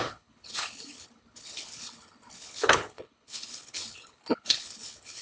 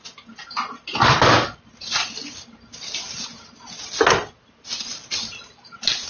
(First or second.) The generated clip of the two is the first